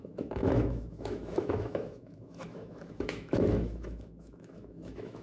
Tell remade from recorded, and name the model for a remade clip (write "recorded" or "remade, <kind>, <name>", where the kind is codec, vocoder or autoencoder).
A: remade, autoencoder, DAC-VAE